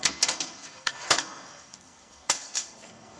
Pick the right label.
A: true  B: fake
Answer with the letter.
B